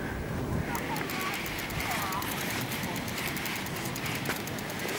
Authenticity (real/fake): real